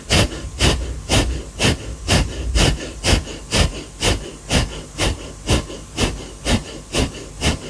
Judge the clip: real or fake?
real